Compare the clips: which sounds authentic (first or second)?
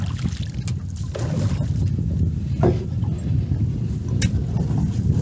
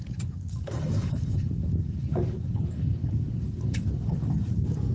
first